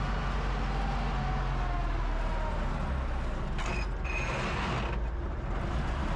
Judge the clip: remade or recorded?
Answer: recorded